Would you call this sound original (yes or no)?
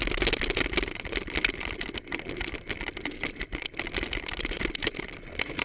yes